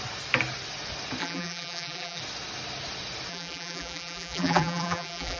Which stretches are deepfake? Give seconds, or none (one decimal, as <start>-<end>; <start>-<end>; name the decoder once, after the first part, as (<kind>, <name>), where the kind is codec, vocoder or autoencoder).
1.2-2.2 (vocoder, BigVGAN v2); 3.3-5.4

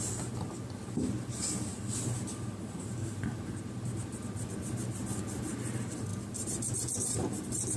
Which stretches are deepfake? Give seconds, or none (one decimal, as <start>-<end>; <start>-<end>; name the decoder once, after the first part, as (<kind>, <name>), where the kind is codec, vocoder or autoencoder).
6.1-7.8 (vocoder, BigVGAN v2)

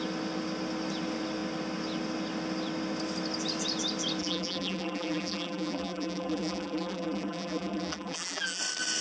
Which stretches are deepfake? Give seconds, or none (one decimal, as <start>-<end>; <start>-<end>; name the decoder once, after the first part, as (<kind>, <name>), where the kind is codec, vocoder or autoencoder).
4.2-8.6 (vocoder, BigVGAN v2)